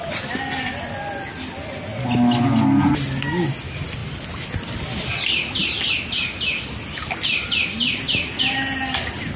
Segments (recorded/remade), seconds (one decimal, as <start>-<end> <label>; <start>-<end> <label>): 0.0-9.4 recorded